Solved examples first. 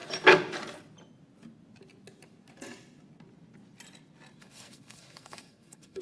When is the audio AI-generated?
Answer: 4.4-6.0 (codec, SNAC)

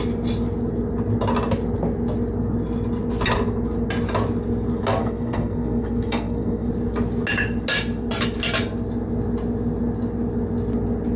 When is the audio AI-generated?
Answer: 5.0-6.7 (codec, SNAC)

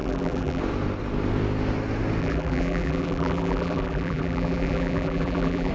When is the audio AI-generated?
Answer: 0.0-0.6 (vocoder, BigVGAN v2); 2.2-5.7

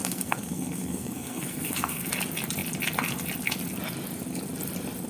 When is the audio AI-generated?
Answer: 0.0-2.1 (codec, SNAC)

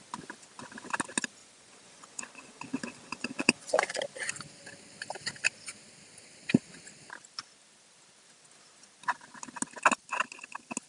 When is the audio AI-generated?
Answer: 1.4-4.0 (vocoder, Vocos)

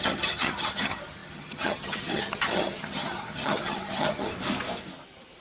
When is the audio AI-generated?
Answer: 0.0-4.3 (vocoder, HiFi-GAN)